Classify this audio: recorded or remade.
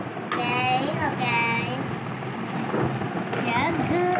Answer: recorded